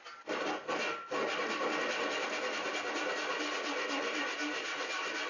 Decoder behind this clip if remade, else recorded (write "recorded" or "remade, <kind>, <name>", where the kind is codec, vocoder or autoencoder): recorded